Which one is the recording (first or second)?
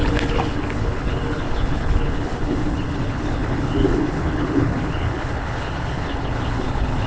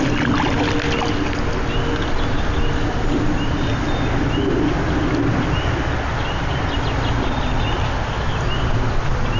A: second